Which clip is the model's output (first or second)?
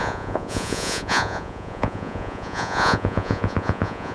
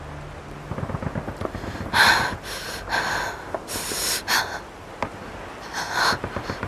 first